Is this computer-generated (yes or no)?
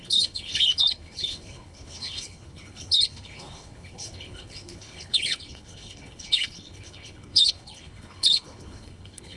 yes